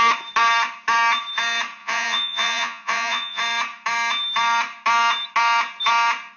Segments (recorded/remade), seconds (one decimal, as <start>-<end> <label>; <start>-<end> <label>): 0.0-1.8 recorded; 1.8-3.4 remade; 3.4-6.4 recorded